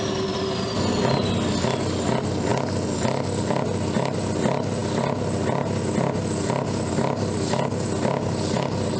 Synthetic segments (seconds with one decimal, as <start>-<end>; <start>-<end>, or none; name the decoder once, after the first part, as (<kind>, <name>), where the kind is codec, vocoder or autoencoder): none